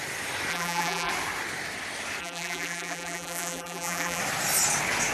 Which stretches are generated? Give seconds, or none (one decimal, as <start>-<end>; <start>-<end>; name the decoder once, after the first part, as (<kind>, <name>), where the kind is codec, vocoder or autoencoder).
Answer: 0.5-1.1 (vocoder, BigVGAN v2); 2.2-4.2